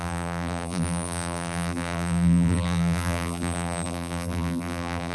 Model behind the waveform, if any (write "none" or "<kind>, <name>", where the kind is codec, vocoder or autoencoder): vocoder, BigVGAN v2